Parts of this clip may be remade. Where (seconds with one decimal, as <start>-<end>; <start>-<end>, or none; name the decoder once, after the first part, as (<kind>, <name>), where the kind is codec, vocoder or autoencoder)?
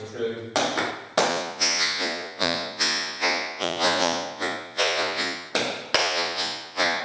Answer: 1.3-5.5 (vocoder, Vocos); 6.0-7.0